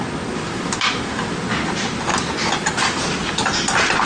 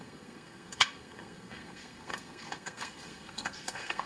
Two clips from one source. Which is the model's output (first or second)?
second